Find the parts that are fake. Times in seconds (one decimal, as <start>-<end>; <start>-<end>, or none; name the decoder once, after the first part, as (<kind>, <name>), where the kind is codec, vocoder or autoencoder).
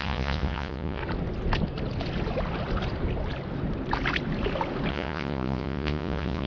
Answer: 0.0-1.0 (vocoder, Vocos); 4.9-6.5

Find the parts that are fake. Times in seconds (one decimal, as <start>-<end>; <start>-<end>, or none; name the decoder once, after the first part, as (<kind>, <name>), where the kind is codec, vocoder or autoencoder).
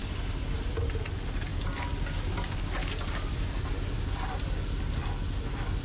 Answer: none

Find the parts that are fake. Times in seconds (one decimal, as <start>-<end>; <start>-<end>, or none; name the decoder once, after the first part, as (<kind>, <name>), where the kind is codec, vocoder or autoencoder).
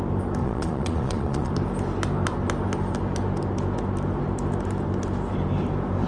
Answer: 0.4-1.5 (vocoder, Vocos)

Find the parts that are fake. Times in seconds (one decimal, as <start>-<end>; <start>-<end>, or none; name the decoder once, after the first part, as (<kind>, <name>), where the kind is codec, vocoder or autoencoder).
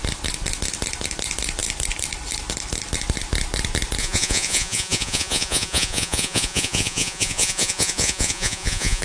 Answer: 4.0-9.0 (vocoder, Vocos)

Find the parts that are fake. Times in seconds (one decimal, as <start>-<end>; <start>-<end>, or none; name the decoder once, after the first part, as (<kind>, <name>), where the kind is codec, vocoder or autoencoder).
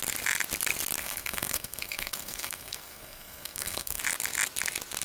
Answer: 1.0-4.0 (codec, SNAC)